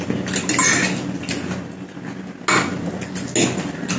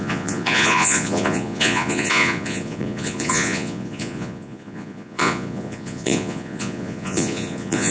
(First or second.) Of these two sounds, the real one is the first